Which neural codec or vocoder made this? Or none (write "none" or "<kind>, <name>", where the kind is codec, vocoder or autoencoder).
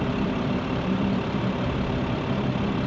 vocoder, BigVGAN v2